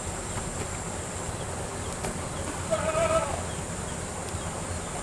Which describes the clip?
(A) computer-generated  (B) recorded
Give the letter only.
B